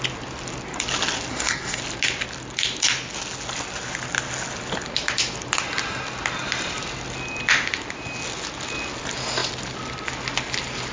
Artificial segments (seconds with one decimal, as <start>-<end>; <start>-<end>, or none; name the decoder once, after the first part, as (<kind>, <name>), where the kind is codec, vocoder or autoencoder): 1.3-1.8 (codec, SNAC)